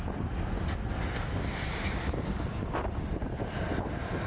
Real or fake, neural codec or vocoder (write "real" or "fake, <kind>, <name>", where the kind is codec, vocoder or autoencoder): real